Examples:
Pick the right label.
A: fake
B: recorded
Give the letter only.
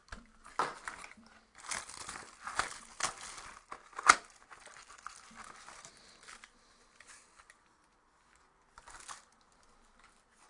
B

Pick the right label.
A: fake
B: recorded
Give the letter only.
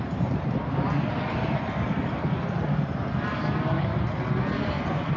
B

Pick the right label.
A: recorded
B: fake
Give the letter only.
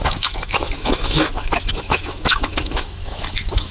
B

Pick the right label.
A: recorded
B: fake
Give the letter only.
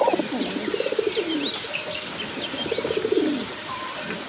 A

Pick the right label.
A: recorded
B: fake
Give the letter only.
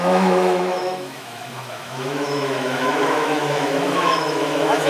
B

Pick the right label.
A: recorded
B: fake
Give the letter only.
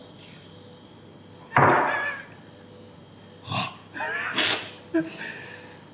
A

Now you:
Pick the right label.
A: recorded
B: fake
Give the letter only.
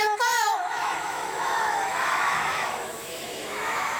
B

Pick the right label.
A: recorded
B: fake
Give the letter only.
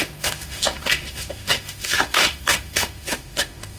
B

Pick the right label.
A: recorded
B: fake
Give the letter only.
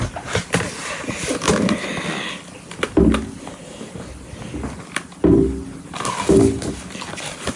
A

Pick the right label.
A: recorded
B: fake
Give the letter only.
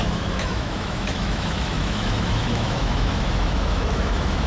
B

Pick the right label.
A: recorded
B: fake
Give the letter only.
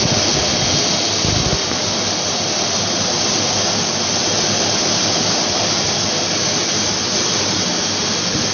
A